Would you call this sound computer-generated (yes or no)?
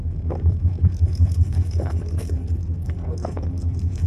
yes